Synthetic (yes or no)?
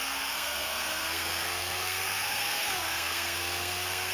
yes